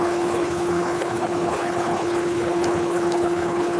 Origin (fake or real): fake